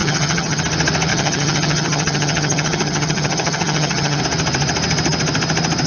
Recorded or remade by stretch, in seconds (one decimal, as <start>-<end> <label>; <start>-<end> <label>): 0.0-0.6 remade; 0.6-1.1 recorded; 1.1-4.2 remade; 4.2-5.9 recorded